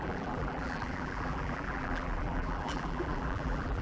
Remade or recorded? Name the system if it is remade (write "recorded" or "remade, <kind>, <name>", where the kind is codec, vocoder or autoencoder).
remade, vocoder, BigVGAN v2